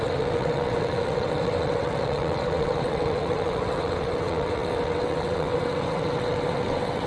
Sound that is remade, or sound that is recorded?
remade